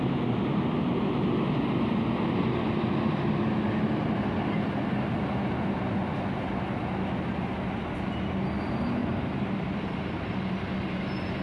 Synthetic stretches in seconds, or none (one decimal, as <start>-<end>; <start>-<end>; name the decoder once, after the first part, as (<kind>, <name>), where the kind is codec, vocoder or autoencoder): 9.0-10.4 (vocoder, BigVGAN v2)